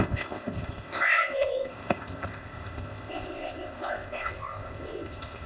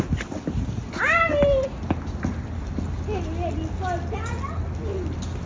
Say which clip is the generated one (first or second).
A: first